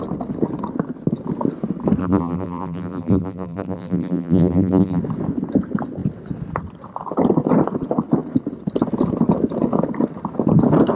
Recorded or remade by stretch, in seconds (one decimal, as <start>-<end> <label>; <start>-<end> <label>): 0.0-2.0 recorded; 2.0-5.0 remade; 5.0-11.0 recorded